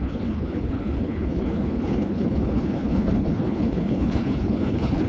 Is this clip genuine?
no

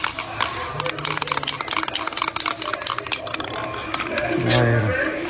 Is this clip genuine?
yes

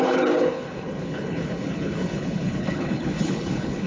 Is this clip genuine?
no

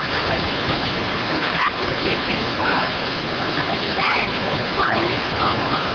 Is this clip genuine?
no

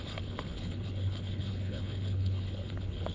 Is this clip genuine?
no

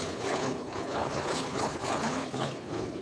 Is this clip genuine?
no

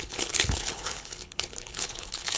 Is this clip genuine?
no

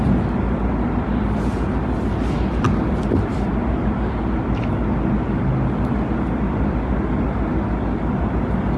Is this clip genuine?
yes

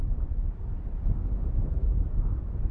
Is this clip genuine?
yes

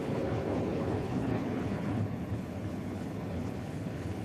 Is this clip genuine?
no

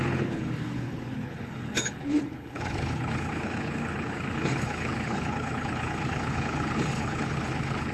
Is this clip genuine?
no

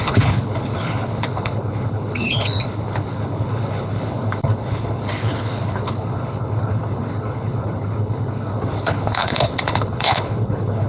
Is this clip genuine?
no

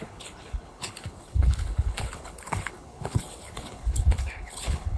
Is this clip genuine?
no